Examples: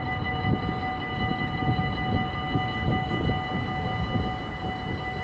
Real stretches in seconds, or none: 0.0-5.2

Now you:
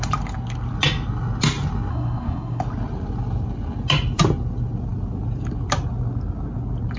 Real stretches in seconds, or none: 0.0-1.9; 2.6-7.0

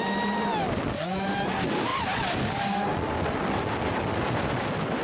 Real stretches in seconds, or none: 0.0-5.0

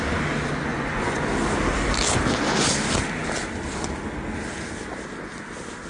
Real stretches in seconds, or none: 0.0-0.7; 1.2-5.9

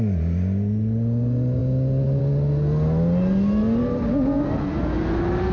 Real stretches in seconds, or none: 0.0-5.5